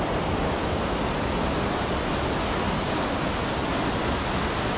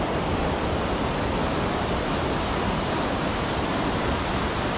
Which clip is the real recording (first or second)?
first